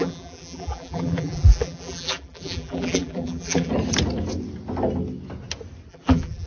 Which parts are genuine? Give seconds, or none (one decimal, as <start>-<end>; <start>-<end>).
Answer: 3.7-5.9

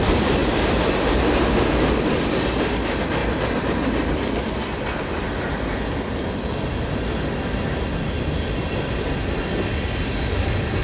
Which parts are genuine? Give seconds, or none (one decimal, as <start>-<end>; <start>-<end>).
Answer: 0.0-0.4; 1.6-3.2; 4.6-10.8

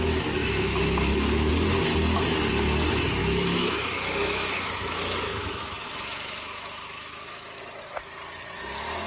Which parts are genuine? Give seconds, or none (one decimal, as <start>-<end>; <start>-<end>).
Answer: 0.0-0.4; 1.5-3.2; 7.6-9.1

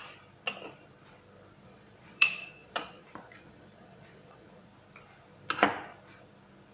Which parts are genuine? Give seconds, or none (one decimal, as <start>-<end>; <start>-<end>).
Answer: 0.0-1.6; 4.7-6.7